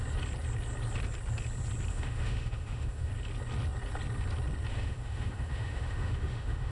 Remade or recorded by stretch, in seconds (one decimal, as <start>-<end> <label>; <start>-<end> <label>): 0.0-1.9 recorded; 1.9-3.1 remade; 3.1-4.7 recorded; 4.7-6.7 remade